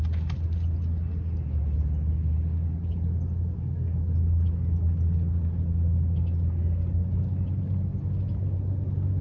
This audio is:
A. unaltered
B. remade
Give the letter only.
A